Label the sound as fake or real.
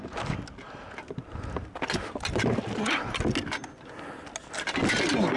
real